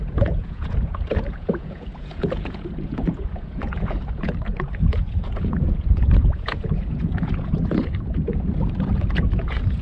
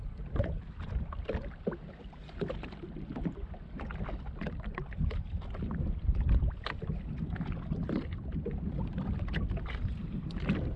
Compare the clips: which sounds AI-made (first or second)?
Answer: first